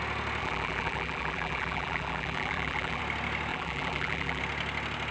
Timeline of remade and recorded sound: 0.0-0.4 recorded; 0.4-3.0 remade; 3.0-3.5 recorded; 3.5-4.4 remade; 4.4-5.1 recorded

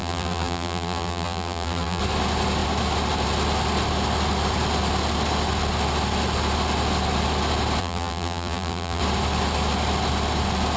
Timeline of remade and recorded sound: 0.0-2.0 remade; 2.0-7.8 recorded; 7.8-9.0 remade; 9.0-10.8 recorded

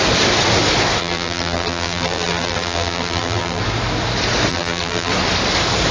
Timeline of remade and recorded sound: 0.0-1.0 recorded; 1.0-3.6 remade; 3.6-4.5 recorded; 4.5-5.1 remade; 5.1-5.9 recorded

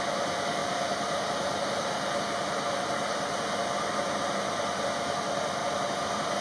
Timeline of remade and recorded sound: 0.0-0.6 recorded; 0.6-4.4 remade; 4.4-5.6 recorded; 5.6-6.4 remade

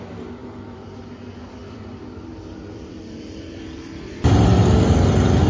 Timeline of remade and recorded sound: 0.0-0.4 recorded; 0.4-1.0 remade; 1.0-1.6 recorded; 1.6-4.9 remade; 4.9-5.5 recorded